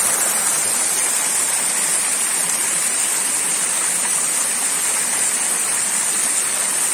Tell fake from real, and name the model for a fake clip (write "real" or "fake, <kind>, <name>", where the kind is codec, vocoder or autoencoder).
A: real